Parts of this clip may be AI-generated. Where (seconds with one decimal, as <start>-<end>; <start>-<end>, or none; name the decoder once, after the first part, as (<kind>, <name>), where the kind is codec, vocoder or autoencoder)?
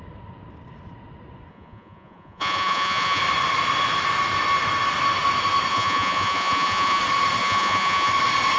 1.5-3.2 (vocoder, Vocos); 5.7-7.0; 7.4-8.1